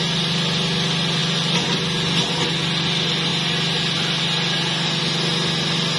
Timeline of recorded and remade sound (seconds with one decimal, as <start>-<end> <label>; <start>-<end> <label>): 0.0-6.0 recorded